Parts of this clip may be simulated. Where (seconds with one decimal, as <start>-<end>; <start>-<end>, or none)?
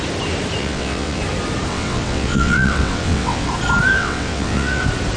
0.6-1.2; 1.7-3.5; 3.9-4.8